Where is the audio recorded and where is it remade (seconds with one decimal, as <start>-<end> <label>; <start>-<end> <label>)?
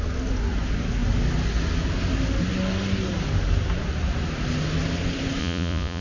0.0-5.4 recorded; 5.4-6.0 remade